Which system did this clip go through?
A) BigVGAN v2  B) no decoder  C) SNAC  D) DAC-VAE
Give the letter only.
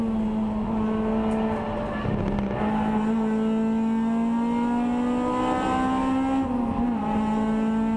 B